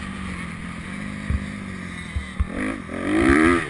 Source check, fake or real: real